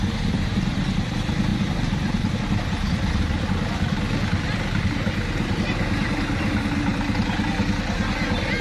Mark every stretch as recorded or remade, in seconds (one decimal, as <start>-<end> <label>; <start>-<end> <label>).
0.0-8.6 recorded